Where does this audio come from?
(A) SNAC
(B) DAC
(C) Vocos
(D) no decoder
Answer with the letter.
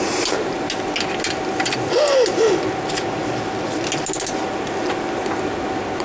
D